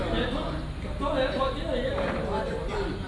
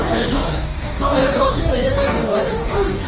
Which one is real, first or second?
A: first